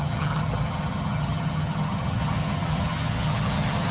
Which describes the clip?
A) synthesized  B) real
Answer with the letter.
A